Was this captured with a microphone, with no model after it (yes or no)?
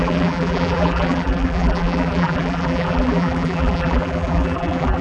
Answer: no